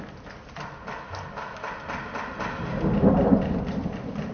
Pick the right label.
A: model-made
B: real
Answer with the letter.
B